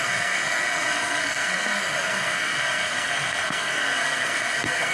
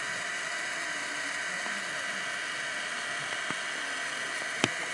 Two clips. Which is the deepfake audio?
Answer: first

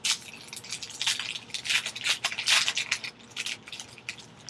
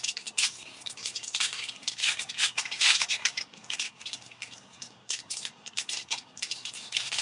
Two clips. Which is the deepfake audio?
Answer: second